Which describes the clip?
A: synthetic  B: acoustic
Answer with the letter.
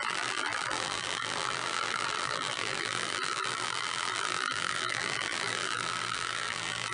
A